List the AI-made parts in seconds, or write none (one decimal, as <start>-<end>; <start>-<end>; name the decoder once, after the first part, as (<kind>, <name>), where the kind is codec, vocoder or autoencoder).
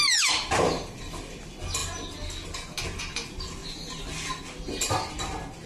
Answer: none